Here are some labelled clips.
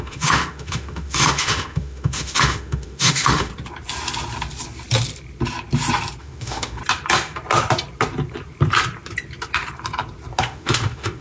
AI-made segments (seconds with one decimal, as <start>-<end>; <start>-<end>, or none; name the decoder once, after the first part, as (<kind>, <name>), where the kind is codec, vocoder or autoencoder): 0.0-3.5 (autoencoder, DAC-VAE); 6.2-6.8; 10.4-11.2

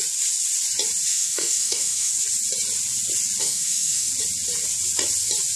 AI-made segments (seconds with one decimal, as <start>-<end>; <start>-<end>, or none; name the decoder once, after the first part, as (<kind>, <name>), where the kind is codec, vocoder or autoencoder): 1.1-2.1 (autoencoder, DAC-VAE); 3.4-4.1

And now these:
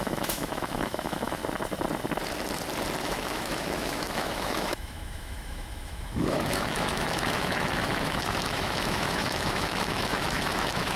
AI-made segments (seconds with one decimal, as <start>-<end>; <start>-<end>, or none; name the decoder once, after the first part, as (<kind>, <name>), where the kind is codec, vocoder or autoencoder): 0.0-1.4 (autoencoder, DAC-VAE); 3.0-11.0

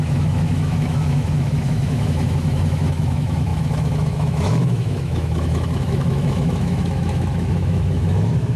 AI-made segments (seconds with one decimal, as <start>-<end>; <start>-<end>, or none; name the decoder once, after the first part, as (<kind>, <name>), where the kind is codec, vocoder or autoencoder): 0.0-8.6 (autoencoder, DAC-VAE)

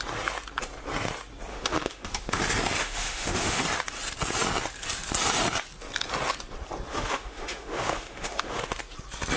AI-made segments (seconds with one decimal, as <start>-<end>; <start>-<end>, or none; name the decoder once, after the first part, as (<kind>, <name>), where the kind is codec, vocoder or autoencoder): 1.5-2.4 (autoencoder, DAC-VAE); 2.8-3.6; 6.9-8.6